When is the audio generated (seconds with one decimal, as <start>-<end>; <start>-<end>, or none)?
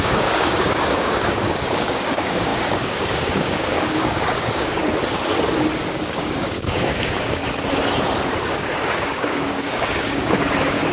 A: 0.0-4.8; 5.9-7.4; 8.5-10.9